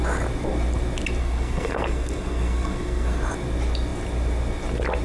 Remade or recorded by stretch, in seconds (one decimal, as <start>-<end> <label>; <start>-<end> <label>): 0.0-1.2 recorded; 1.2-3.2 remade; 3.2-5.0 recorded